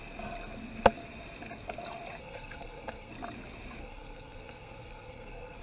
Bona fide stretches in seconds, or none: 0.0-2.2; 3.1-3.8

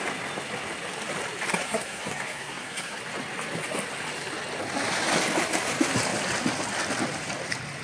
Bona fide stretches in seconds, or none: 0.0-1.6; 3.0-7.8

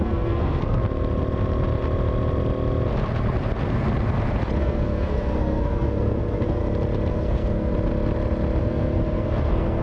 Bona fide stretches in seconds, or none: 0.8-4.6; 6.6-7.1; 7.7-8.6